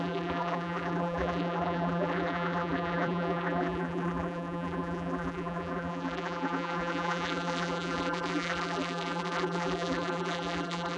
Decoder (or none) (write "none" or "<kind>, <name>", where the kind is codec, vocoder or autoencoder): vocoder, BigVGAN v2